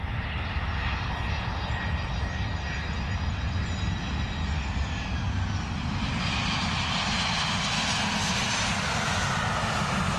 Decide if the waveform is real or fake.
real